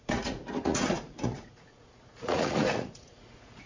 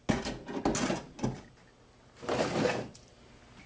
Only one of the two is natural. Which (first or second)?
second